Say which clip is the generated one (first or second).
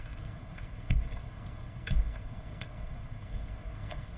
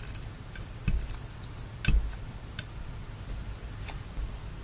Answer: first